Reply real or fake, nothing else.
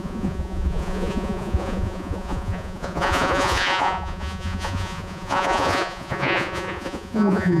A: fake